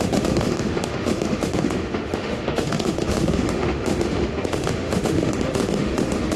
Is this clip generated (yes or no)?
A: yes